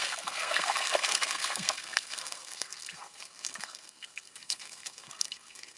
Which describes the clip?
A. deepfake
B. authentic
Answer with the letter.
A